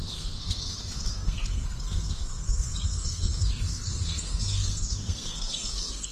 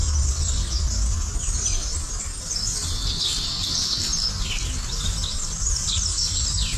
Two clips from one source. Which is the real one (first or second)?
second